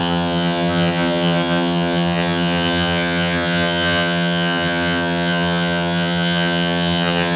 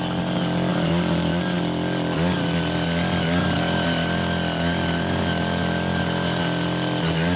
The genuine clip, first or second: second